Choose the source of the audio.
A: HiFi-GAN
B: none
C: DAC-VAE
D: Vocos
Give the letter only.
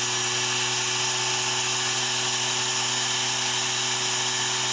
B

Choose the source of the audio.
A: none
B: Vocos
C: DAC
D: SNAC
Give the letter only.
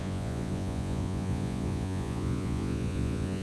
B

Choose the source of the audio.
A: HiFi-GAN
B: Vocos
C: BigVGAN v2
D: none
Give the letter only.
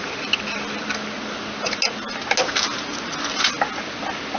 D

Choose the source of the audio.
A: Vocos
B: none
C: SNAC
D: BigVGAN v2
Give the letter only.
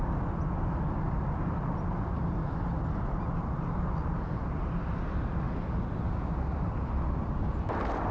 B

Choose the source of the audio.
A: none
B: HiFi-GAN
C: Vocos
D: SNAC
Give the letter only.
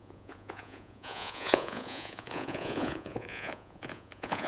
C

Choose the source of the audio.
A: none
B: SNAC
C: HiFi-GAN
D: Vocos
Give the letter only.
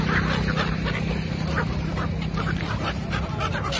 A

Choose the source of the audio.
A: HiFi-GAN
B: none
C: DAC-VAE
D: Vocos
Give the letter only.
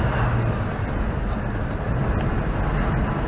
B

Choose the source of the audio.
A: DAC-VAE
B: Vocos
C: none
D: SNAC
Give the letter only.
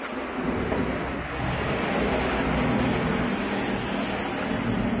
C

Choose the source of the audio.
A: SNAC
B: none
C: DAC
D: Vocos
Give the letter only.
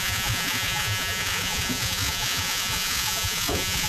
D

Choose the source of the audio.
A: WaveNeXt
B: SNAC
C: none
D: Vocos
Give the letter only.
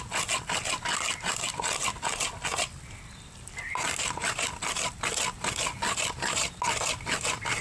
C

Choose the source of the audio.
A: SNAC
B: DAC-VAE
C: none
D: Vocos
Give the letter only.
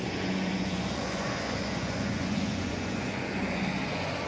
D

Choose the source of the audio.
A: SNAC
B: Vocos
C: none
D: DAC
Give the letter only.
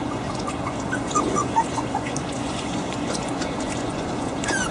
B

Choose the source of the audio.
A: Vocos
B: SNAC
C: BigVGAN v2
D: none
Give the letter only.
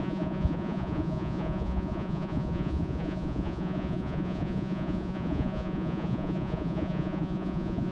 A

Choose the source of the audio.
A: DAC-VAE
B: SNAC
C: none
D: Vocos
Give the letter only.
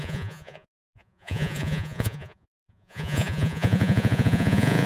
D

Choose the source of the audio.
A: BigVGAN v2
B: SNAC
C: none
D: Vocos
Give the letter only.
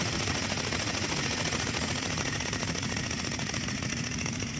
D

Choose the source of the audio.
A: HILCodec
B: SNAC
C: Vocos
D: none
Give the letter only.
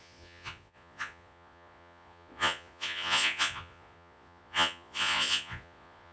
C